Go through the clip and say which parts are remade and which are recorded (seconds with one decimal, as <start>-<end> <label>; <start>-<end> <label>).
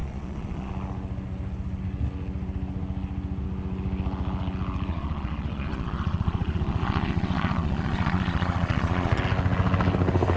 0.0-0.7 remade; 0.7-4.9 recorded; 4.9-9.2 remade; 9.2-10.4 recorded